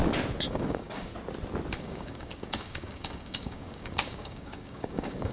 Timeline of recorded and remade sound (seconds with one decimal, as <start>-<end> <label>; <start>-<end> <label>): 0.0-0.5 recorded; 0.5-1.1 remade; 1.1-1.8 recorded; 1.8-5.3 remade